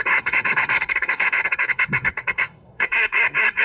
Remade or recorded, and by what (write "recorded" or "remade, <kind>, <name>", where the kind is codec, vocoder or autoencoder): remade, codec, SNAC